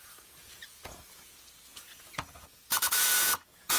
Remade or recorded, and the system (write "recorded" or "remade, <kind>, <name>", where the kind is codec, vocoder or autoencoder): remade, vocoder, Vocos